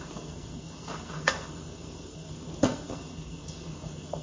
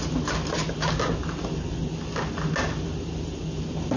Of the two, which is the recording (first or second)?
second